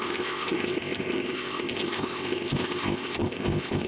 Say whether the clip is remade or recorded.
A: remade